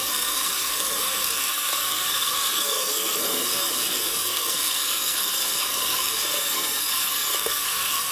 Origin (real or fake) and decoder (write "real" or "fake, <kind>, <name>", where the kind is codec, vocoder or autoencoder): fake, codec, SNAC